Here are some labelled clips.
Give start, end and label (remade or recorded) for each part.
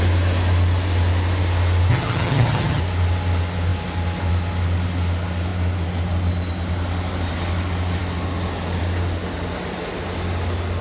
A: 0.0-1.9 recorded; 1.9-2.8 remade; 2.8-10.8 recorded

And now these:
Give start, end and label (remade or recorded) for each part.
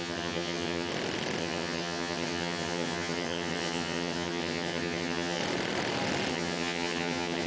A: 0.0-0.9 remade; 0.9-1.4 recorded; 1.4-5.4 remade; 5.4-6.3 recorded; 6.3-7.5 remade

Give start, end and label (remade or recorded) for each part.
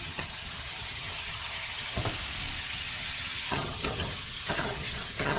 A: 0.0-2.0 remade; 2.0-2.6 recorded; 2.6-5.4 remade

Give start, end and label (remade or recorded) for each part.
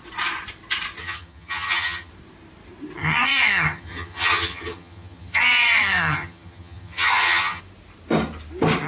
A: 0.0-1.0 recorded; 1.0-2.1 remade; 2.1-3.0 recorded; 3.0-7.6 remade; 7.6-8.9 recorded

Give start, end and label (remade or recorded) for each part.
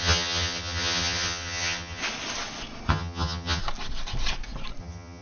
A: 0.0-2.0 remade; 2.0-2.9 recorded; 2.9-3.6 remade; 3.6-4.8 recorded; 4.8-5.2 remade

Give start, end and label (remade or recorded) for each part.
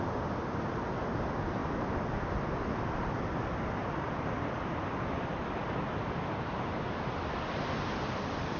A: 0.0-8.6 recorded